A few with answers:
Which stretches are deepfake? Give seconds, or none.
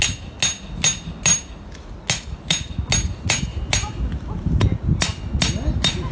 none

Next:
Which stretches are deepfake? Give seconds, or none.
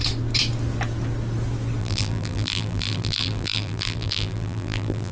1.8-5.1 (vocoder, BigVGAN v2)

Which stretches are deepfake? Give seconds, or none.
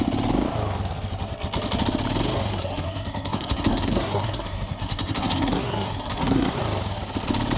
2.5-6.6 (codec, SNAC)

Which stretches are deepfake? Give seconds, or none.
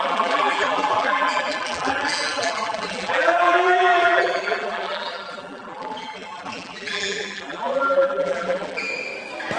0.0-8.9 (vocoder, BigVGAN v2)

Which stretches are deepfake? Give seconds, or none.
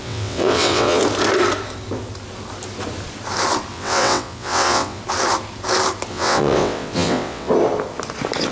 0.0-1.0 (vocoder, WaveNeXt); 3.7-5.0; 6.1-7.5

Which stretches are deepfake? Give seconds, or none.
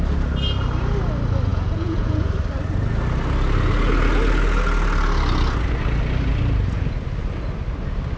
1.5-2.2 (vocoder, Vocos)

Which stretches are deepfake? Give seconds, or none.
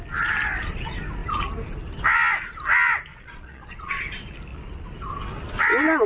3.1-4.0 (vocoder, Vocos)